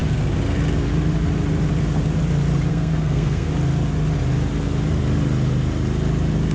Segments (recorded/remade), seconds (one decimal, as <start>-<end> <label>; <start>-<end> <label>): 0.0-2.7 recorded; 2.7-3.5 remade; 3.5-6.5 recorded